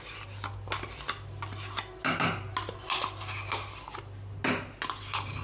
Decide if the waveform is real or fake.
real